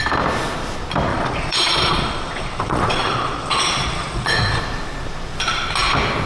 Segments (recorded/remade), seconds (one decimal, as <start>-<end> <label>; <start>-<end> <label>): 0.0-1.1 recorded; 1.1-4.6 remade; 4.6-6.3 recorded